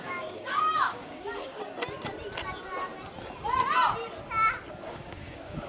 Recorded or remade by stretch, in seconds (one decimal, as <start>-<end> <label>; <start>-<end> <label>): 0.0-1.6 remade; 1.6-4.7 recorded; 4.7-5.7 remade